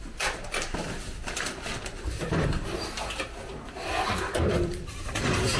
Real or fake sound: fake